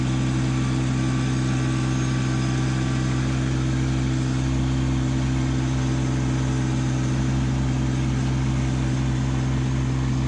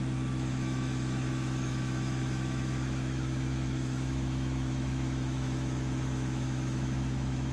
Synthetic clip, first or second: second